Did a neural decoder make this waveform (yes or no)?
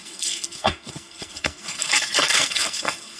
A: yes